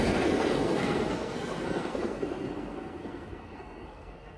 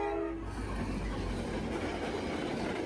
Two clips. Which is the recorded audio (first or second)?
second